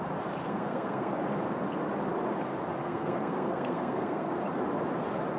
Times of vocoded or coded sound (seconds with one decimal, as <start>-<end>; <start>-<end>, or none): 0.4-1.1; 2.8-4.3